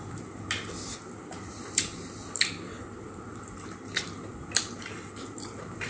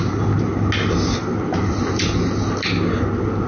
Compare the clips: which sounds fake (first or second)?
first